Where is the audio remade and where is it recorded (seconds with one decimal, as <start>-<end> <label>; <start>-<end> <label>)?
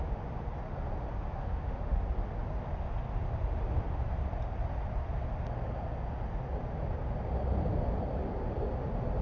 0.0-1.4 recorded; 1.4-2.0 remade; 2.0-9.2 recorded